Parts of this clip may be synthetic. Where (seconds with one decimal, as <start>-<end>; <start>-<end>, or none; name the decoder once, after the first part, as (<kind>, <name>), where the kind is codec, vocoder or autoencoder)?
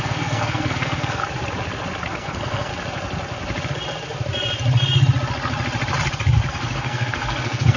0.0-1.2 (codec, SNAC); 2.1-2.7; 6.5-7.8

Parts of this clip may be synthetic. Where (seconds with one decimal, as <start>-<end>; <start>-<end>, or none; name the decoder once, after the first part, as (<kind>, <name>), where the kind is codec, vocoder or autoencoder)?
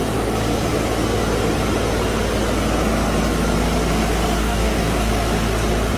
4.4-5.1 (codec, DAC)